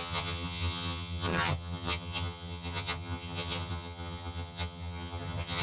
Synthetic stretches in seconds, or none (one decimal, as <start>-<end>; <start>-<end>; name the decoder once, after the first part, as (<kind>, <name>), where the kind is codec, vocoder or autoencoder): 0.0-5.6 (vocoder, HiFi-GAN)